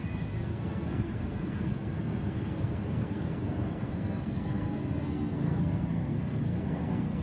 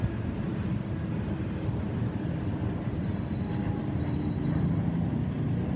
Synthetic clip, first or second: first